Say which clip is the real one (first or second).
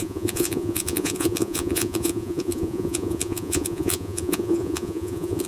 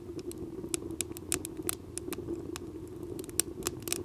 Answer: second